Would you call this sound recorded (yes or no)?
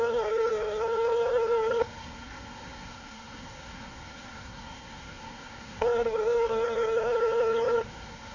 no